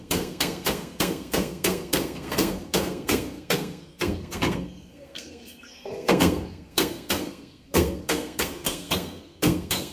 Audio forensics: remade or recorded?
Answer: remade